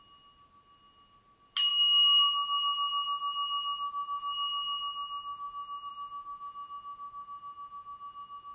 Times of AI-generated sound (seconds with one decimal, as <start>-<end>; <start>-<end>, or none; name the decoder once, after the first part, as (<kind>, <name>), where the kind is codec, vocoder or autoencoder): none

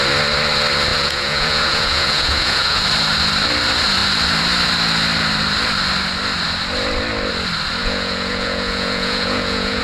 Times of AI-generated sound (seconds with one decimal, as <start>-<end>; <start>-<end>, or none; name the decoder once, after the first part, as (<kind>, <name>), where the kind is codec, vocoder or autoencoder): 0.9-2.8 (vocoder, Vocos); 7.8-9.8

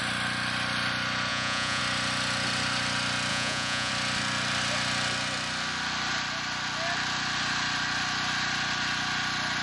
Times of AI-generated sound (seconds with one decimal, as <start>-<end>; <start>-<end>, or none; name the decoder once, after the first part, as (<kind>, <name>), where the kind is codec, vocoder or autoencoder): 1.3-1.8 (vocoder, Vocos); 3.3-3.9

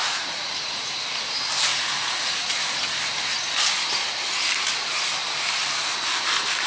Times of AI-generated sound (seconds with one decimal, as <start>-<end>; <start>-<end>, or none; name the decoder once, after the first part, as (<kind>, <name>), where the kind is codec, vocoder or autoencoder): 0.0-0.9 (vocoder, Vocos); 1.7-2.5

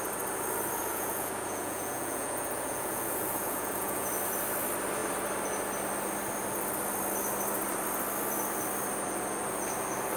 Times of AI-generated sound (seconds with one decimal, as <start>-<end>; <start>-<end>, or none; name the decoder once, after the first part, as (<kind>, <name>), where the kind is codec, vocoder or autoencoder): 0.8-4.1 (vocoder, Vocos)

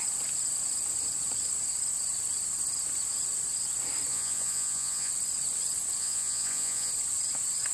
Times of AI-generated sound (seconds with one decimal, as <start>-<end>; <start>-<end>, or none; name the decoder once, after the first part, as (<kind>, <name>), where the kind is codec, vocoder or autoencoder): 4.1-5.1 (vocoder, Vocos); 6.0-6.9

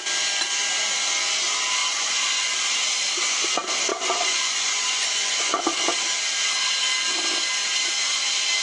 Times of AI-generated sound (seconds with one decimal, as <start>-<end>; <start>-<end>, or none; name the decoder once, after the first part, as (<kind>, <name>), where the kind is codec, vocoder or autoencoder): 1.8-2.5 (vocoder, Vocos); 3.9-5.6

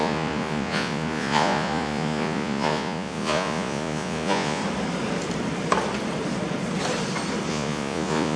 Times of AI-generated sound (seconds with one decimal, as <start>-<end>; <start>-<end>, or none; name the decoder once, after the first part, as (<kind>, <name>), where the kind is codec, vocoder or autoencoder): 0.0-4.6 (vocoder, Vocos); 7.5-8.4